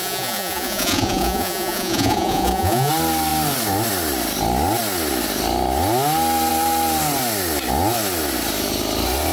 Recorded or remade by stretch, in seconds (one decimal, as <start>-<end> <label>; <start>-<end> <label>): 0.0-2.9 remade; 2.9-9.3 recorded